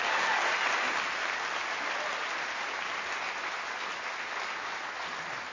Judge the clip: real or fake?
real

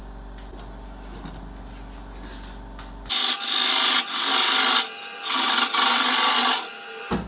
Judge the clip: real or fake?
real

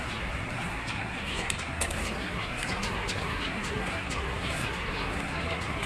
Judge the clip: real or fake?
fake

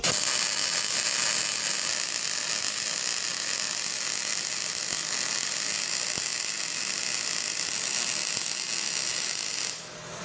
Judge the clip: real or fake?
real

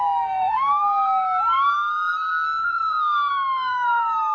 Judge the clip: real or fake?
fake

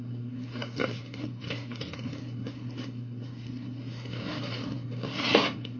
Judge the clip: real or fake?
fake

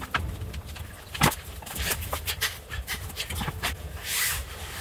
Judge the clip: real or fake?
fake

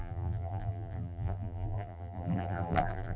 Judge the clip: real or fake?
fake